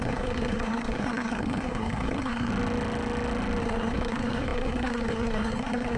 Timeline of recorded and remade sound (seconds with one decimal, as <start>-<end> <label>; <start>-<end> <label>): 0.0-2.5 remade; 2.5-3.6 recorded; 3.6-6.0 remade